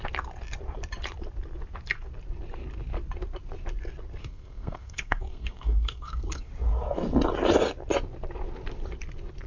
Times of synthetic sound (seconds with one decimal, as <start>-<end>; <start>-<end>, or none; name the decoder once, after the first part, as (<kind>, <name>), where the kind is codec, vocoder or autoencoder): 4.2-6.5 (codec, SNAC)